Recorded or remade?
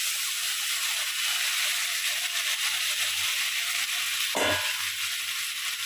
recorded